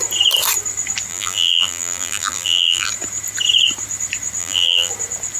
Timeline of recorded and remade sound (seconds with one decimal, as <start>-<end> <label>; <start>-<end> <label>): 0.0-1.1 recorded; 1.1-2.9 remade; 2.9-4.4 recorded; 4.4-4.9 remade; 4.9-5.4 recorded

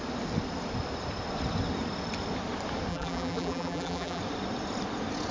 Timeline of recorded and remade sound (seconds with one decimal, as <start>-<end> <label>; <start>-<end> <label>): 0.0-2.9 recorded; 2.9-4.2 remade; 4.2-5.3 recorded

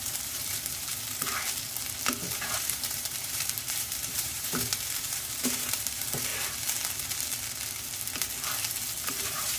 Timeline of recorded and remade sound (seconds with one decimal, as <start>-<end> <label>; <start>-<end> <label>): 0.0-0.9 remade; 0.9-2.3 recorded; 2.3-6.3 remade; 6.3-9.0 recorded; 9.0-9.6 remade

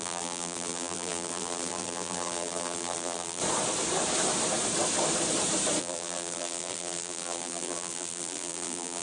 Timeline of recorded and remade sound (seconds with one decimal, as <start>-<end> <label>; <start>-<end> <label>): 0.0-3.4 remade; 3.4-5.8 recorded; 5.8-9.0 remade